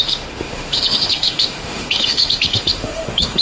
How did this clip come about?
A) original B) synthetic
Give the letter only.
B